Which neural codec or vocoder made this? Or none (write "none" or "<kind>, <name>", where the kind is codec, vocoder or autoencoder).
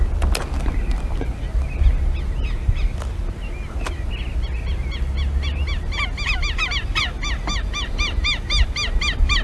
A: none